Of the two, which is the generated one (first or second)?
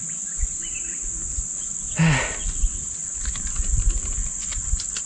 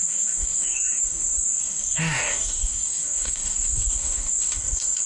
second